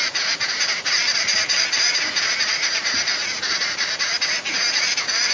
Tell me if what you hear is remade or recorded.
remade